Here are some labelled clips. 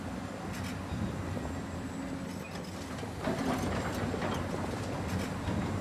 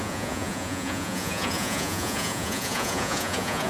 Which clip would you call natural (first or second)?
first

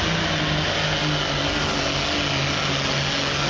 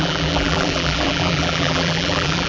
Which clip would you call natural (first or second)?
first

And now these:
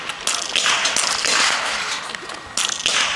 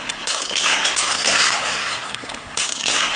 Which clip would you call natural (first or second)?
first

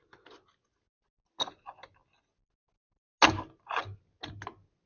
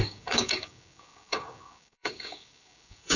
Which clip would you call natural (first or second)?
first